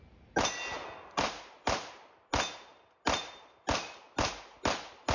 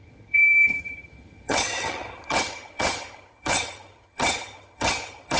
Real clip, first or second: first